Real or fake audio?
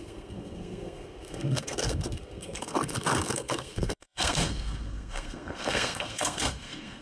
fake